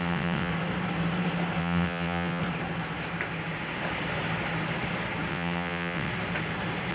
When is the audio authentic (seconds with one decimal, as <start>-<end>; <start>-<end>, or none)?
0.5-1.6; 2.4-5.3; 6.1-6.9